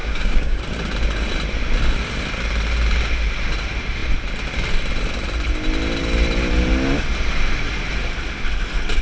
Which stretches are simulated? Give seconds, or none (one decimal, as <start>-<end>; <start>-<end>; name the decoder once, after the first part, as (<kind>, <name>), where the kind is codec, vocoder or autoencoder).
0.0-0.6 (codec, DAC)